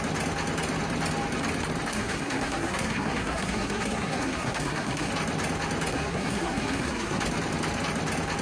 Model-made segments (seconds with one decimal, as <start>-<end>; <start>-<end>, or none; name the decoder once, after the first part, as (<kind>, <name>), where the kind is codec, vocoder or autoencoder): 1.9-5.1 (codec, SNAC); 5.9-7.2